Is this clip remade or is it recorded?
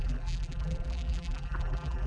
remade